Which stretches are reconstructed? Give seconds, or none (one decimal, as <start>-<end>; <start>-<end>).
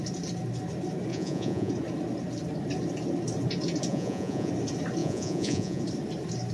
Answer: 1.1-1.7; 3.9-4.5; 5.0-5.8